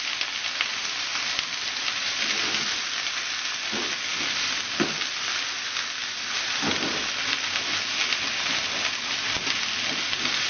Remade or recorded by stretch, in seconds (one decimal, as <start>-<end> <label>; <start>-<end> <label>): 0.0-10.5 recorded